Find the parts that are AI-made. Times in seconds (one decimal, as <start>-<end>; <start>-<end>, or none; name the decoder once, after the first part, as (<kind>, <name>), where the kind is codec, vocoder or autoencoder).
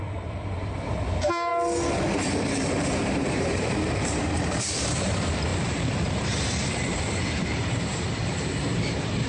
0.0-1.5 (vocoder, BigVGAN v2); 2.1-9.3